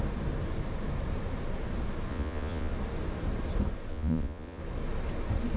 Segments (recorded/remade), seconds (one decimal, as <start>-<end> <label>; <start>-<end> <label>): 0.0-2.1 recorded; 2.1-2.7 remade; 2.7-3.9 recorded; 3.9-4.6 remade; 4.6-5.6 recorded